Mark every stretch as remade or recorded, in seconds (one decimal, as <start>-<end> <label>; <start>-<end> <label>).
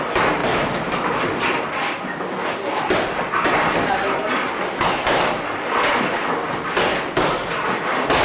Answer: 0.0-0.4 recorded; 0.4-1.6 remade; 1.6-8.2 recorded